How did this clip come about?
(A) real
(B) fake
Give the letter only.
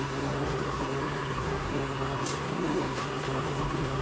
B